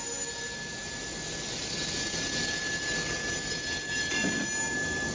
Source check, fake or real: real